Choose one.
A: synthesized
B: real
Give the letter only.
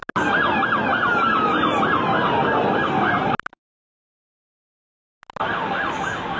B